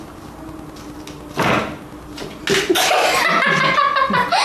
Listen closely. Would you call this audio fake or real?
real